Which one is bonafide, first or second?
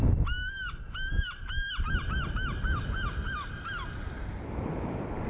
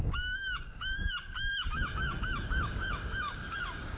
first